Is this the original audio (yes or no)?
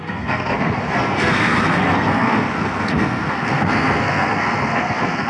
no